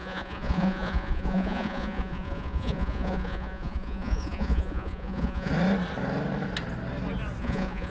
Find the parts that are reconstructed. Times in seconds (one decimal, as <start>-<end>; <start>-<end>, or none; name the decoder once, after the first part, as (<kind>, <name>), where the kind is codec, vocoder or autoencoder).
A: 0.0-5.5 (vocoder, Vocos); 7.4-7.9